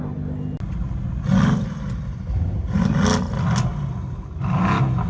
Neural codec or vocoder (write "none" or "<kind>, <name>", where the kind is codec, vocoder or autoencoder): none